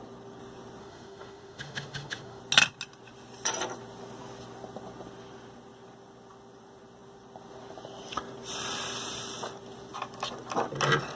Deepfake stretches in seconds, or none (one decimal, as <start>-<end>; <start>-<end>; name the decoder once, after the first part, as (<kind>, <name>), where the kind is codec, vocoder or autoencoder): 0.8-2.4 (autoencoder, DAC-VAE)